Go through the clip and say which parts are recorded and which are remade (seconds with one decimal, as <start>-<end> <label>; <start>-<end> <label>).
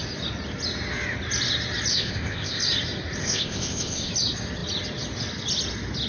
0.0-1.9 recorded; 1.9-2.6 remade; 2.6-3.2 recorded; 3.2-4.1 remade; 4.1-6.1 recorded